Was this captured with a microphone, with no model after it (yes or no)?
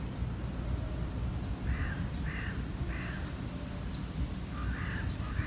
yes